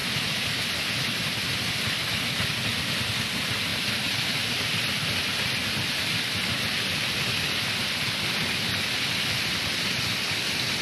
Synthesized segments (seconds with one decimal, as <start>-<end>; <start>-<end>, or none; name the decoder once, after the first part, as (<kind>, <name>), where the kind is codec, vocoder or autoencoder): 3.7-5.2 (vocoder, BigVGAN v2)